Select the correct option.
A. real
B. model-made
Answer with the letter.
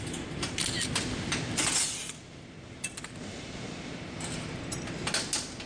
A